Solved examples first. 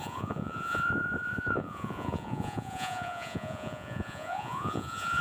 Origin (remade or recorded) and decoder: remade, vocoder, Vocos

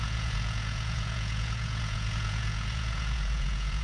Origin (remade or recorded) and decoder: remade, vocoder, Vocos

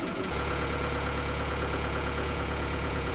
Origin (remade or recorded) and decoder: remade, vocoder, Vocos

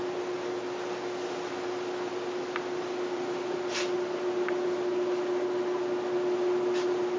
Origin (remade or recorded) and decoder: recorded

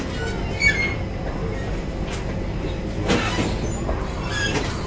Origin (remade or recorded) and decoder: recorded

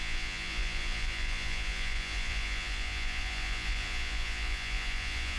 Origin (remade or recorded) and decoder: remade, vocoder, Vocos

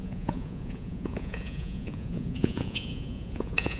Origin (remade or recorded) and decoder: remade, vocoder, Vocos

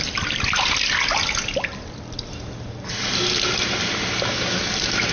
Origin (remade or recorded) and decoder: recorded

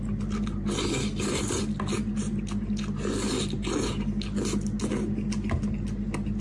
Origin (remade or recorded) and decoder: recorded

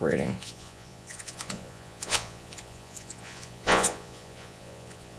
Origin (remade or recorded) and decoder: remade, vocoder, Vocos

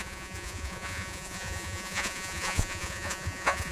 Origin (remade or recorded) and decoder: remade, vocoder, Vocos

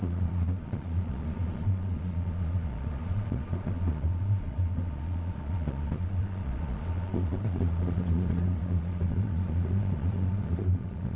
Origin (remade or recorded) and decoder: remade, vocoder, Vocos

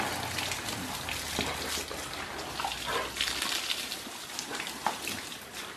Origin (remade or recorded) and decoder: recorded